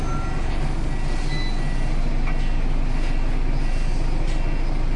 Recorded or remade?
recorded